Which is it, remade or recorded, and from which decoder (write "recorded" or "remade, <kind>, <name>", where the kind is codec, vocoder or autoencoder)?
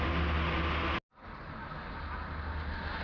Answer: recorded